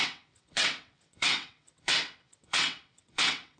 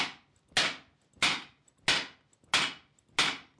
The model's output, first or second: first